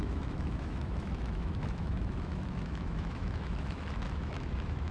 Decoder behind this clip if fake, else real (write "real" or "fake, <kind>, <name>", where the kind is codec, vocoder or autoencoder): fake, autoencoder, DAC-VAE